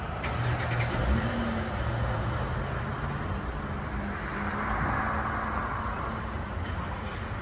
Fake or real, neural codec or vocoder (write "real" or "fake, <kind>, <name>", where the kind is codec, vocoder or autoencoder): real